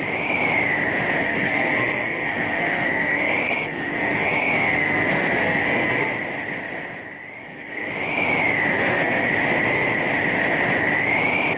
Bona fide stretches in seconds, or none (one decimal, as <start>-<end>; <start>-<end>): 0.0-1.2; 6.1-7.4; 7.9-8.7; 9.3-11.6